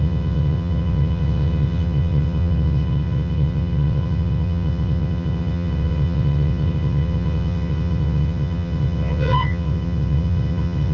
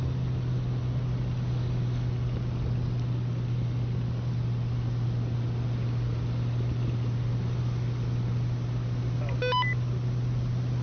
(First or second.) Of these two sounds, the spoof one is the first